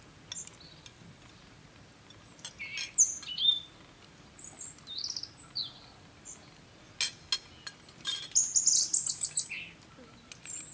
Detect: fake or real real